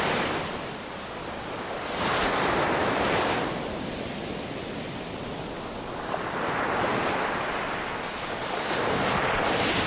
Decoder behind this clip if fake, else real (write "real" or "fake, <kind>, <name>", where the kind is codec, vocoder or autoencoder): real